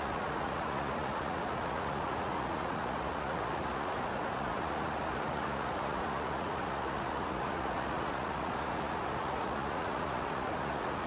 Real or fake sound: fake